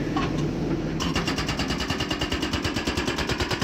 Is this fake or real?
real